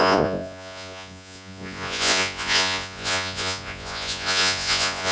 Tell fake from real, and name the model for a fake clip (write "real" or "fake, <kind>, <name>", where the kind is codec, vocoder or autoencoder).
fake, vocoder, Vocos